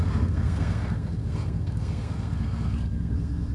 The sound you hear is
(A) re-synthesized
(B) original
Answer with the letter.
A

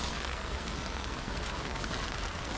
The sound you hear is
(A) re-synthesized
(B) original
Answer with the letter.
A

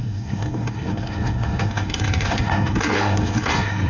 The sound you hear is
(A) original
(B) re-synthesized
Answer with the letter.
B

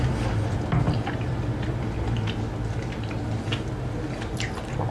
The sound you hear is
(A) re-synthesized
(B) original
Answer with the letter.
B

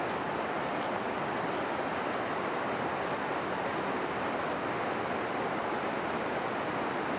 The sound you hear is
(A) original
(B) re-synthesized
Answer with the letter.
A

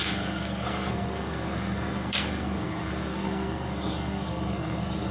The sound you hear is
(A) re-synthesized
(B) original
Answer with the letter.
A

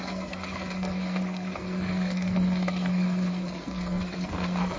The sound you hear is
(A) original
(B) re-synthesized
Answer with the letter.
B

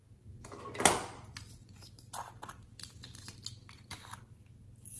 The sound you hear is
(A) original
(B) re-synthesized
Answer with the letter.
A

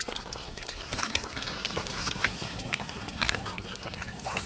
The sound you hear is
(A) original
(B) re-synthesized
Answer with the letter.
B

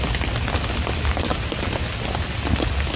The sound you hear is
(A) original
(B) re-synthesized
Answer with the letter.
A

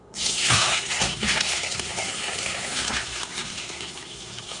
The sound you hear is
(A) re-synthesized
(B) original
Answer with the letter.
A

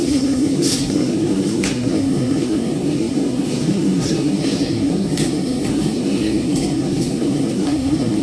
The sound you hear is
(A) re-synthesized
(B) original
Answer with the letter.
A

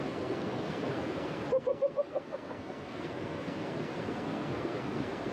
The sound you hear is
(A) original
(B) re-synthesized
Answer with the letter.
B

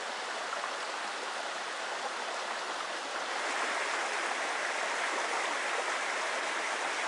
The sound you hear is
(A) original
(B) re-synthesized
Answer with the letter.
A